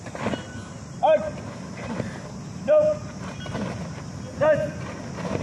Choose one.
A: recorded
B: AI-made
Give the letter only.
A